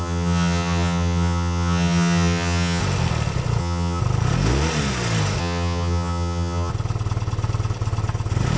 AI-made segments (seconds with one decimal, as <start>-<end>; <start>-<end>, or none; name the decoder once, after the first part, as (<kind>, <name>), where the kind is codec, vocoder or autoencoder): 0.0-2.8 (vocoder, HiFi-GAN); 3.6-4.0; 5.4-6.7